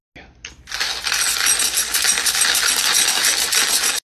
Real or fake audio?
real